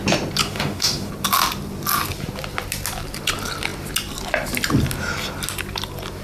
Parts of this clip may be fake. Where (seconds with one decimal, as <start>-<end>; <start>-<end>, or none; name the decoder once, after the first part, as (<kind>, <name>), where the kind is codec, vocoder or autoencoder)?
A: 0.4-1.1 (autoencoder, DAC-VAE)